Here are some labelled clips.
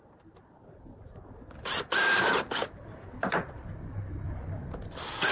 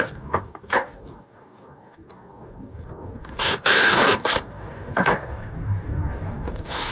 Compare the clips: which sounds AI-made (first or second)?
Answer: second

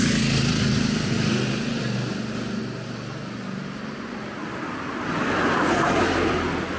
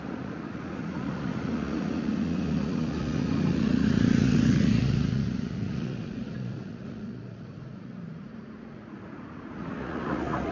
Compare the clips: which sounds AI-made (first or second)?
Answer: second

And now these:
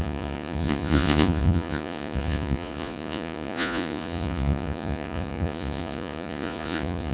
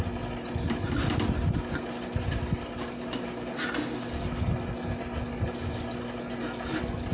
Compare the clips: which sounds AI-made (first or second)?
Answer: first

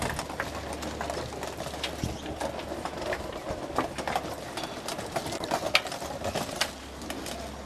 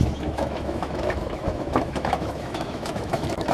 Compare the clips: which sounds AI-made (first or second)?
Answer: second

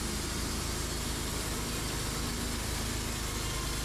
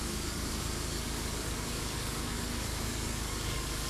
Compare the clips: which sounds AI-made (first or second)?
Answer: second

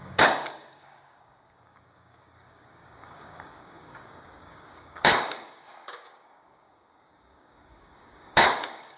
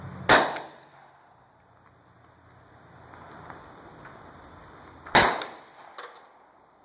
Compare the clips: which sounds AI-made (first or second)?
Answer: first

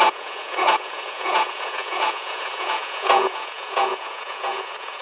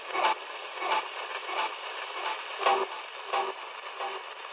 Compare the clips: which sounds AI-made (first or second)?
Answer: first